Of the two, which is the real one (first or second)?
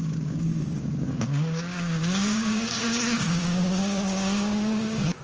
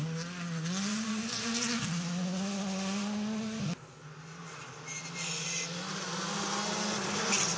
second